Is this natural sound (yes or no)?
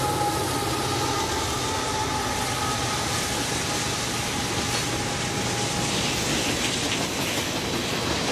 yes